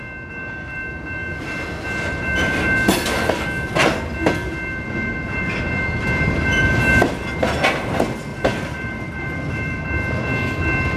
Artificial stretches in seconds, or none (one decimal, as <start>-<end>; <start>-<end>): 8.3-9.8